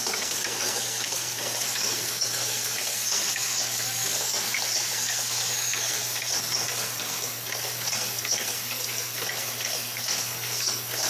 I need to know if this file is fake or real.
fake